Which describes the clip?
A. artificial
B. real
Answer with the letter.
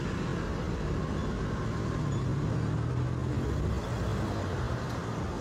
B